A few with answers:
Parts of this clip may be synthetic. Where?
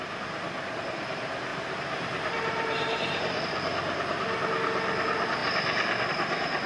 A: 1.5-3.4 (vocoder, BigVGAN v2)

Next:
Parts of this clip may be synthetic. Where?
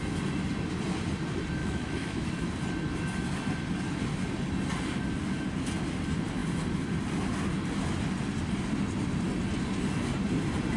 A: 1.6-2.3 (autoencoder, DAC-VAE)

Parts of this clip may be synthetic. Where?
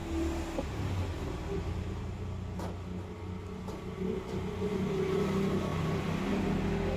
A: 5.7-6.3 (vocoder, BigVGAN v2)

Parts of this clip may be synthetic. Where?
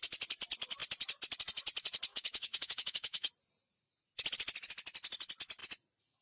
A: 2.1-3.3 (codec, DAC)